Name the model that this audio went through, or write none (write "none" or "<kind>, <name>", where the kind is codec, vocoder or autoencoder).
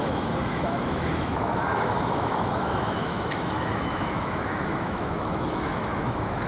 autoencoder, DAC-VAE